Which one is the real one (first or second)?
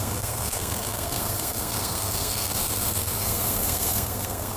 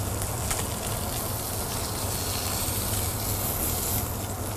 second